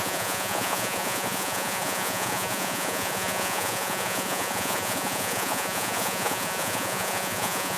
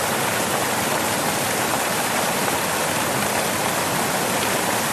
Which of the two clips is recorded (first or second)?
second